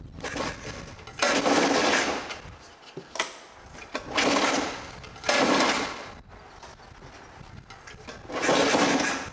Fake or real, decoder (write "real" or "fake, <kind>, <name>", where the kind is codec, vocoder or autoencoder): real